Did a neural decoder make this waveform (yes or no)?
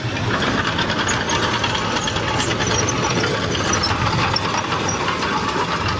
no